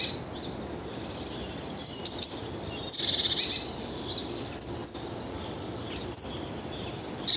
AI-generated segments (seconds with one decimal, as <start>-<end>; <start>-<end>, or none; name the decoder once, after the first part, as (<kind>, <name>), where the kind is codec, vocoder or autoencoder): none